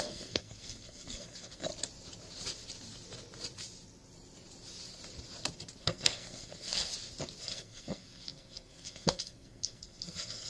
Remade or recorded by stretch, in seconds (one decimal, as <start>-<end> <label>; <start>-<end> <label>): 0.0-1.7 remade; 1.7-5.8 recorded; 5.8-6.9 remade; 6.9-7.4 recorded; 7.4-10.5 remade